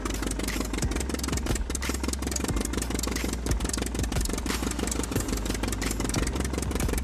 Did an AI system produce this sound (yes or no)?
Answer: no